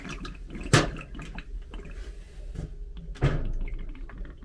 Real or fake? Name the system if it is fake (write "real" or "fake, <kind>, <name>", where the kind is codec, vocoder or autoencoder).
real